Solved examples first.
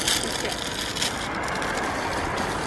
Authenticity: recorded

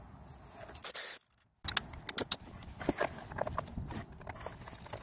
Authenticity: recorded